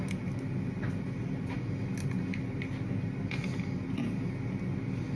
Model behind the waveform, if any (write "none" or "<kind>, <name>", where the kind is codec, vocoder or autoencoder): none